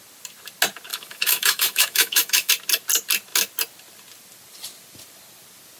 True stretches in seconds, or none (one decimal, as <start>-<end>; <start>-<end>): 0.0-0.9; 2.5-5.8